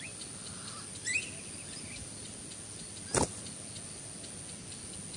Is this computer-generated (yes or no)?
no